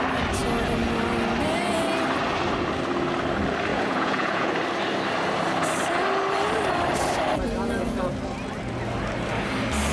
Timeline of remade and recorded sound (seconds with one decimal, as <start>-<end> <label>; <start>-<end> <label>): 0.0-3.7 recorded; 3.7-4.5 remade; 4.5-9.9 recorded